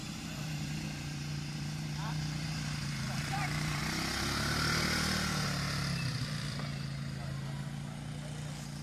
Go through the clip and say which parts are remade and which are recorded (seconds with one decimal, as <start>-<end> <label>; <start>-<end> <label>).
0.0-3.8 remade; 3.8-8.8 recorded